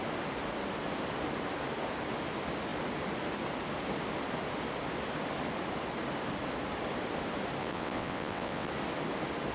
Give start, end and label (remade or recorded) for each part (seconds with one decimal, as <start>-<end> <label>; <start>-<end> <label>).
0.0-7.6 recorded; 7.6-8.7 remade; 8.7-9.5 recorded